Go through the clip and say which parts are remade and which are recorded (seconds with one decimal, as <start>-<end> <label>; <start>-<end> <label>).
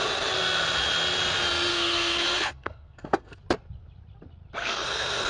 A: 0.0-1.7 recorded; 1.7-3.4 remade; 3.4-4.6 recorded; 4.6-5.3 remade